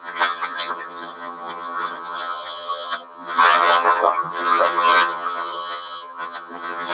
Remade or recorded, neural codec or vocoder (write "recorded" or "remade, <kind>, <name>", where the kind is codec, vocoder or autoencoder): remade, vocoder, HiFi-GAN